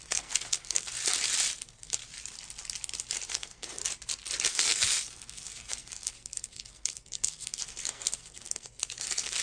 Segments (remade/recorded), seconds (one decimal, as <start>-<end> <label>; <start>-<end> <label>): 0.0-1.0 remade; 1.0-1.6 recorded; 1.6-2.0 remade; 2.0-3.3 recorded; 3.3-3.8 remade; 3.8-4.5 recorded; 4.5-9.4 remade